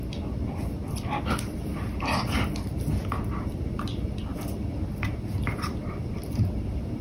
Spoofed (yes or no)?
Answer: no